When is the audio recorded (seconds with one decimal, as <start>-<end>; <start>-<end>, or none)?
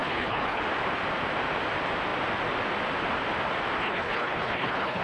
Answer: 0.6-3.8